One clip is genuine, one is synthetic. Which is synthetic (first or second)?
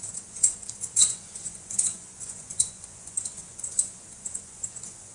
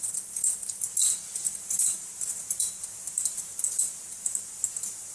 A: first